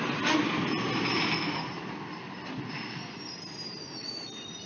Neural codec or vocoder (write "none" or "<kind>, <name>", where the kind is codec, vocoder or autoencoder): none